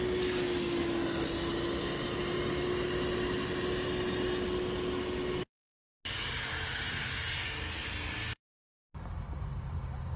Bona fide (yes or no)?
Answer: yes